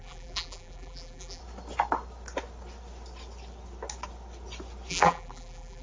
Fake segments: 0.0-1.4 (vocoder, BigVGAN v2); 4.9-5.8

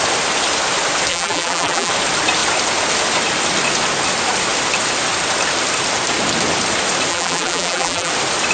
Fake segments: 1.1-1.9 (vocoder, BigVGAN v2); 7.1-8.1

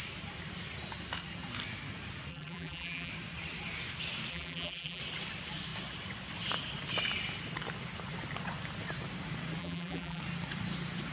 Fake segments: 2.3-3.1 (vocoder, BigVGAN v2); 4.3-5.0; 9.6-10.2

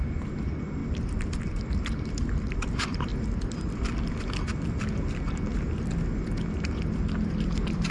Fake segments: 0.0-0.8 (vocoder, BigVGAN v2); 1.4-3.1; 7.4-7.9